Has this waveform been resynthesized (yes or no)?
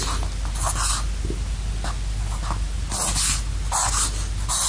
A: no